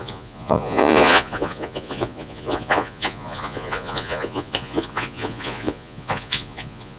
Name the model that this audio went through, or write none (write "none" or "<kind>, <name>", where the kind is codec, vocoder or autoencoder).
vocoder, Vocos